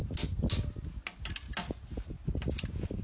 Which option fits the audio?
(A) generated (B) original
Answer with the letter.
B